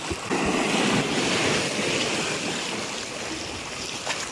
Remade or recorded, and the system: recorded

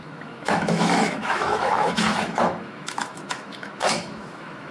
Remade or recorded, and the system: remade, autoencoder, DAC-VAE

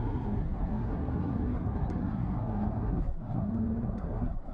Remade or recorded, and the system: remade, codec, SNAC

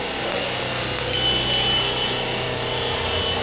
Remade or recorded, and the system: recorded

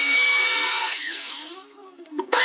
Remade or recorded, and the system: remade, codec, SNAC